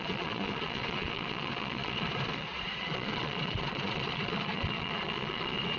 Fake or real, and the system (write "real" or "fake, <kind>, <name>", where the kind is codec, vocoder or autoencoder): fake, vocoder, Vocos